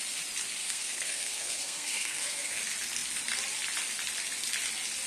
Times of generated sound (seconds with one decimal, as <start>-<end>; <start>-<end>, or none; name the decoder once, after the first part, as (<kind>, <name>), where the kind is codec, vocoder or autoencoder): 0.6-2.6 (codec, SNAC)